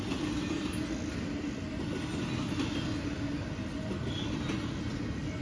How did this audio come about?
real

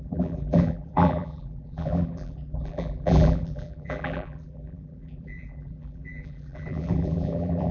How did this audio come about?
fake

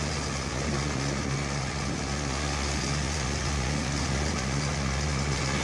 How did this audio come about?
fake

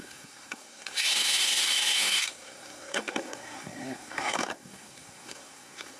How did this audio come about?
fake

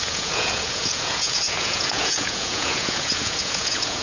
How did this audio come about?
fake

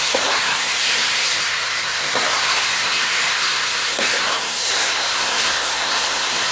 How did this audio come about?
fake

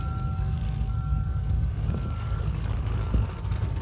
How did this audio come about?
fake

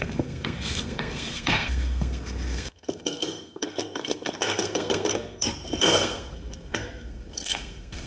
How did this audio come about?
fake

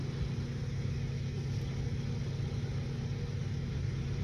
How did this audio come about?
real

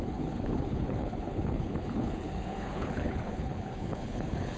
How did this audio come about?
fake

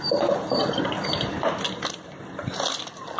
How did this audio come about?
real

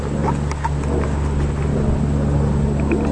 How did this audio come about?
real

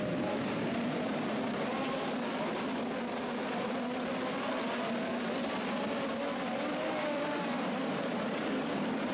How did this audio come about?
fake